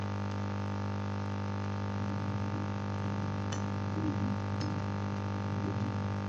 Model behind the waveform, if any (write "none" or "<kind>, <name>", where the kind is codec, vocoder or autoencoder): none